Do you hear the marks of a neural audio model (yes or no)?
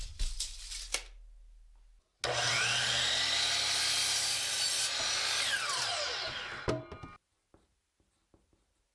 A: no